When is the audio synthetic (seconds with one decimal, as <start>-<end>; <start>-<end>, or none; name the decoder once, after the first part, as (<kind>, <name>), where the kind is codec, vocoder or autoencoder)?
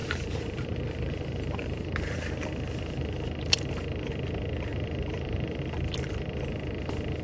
0.0-4.1 (vocoder, BigVGAN v2); 4.7-5.6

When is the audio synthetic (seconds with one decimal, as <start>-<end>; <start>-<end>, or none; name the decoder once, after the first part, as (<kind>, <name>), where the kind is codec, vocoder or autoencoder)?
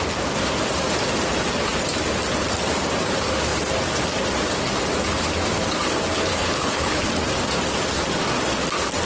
6.3-7.1 (codec, HILCodec)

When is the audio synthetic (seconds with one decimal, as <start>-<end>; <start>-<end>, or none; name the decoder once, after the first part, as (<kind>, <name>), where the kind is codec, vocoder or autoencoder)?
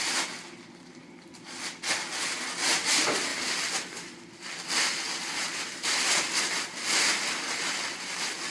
3.3-6.4 (vocoder, BigVGAN v2)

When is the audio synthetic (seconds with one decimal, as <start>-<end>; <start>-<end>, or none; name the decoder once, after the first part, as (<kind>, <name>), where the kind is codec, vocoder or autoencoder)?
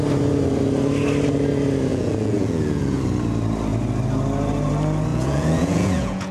1.9-3.0 (vocoder, Vocos); 5.1-6.3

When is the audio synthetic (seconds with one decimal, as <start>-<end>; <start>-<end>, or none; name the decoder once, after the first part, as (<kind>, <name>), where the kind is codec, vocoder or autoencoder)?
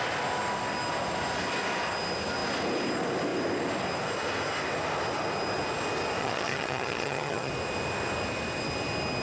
6.2-7.5 (vocoder, HiFi-GAN)